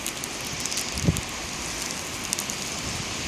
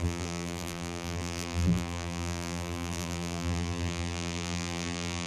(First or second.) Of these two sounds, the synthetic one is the second